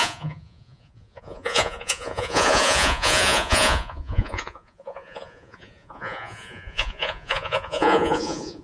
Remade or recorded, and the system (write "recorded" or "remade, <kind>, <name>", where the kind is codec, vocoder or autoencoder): remade, vocoder, Vocos